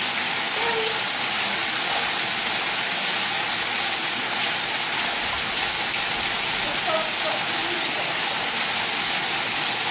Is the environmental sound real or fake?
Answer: real